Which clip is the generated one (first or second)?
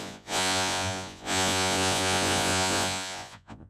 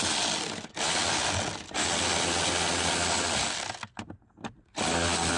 first